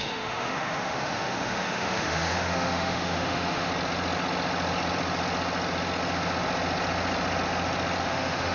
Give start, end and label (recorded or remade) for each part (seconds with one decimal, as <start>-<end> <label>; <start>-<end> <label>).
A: 0.0-3.7 remade; 3.7-8.0 recorded; 8.0-8.5 remade